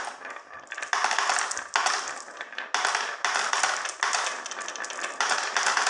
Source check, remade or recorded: recorded